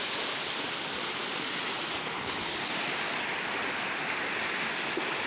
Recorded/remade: recorded